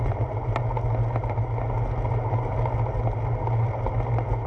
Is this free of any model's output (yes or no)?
yes